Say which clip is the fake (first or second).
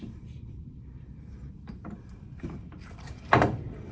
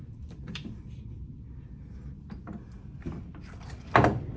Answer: first